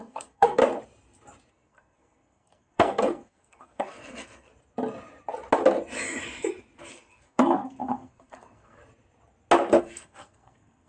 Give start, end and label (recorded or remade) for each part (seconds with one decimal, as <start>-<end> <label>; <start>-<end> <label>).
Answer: 0.0-0.6 remade; 0.6-1.5 recorded; 1.5-4.5 remade; 4.5-6.9 recorded; 6.9-8.8 remade; 8.8-9.8 recorded; 9.8-10.9 remade